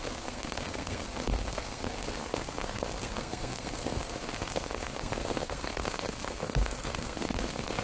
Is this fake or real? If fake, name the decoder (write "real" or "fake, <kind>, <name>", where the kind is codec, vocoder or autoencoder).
fake, codec, SNAC